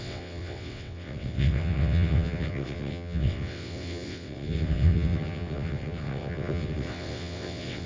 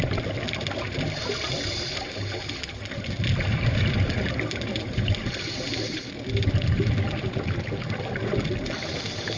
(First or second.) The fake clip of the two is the first